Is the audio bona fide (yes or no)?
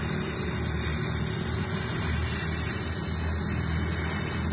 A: yes